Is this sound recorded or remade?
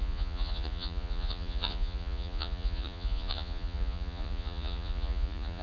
remade